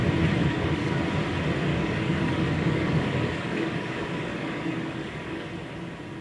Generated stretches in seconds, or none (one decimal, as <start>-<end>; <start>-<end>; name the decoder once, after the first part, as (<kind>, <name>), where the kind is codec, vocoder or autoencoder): 0.4-1.0 (codec, DAC); 1.7-5.4